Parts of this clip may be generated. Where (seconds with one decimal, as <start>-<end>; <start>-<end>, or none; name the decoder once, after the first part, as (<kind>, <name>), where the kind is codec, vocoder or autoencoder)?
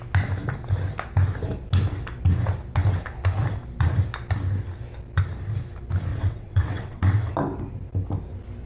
6.1-7.3 (vocoder, WaveNeXt)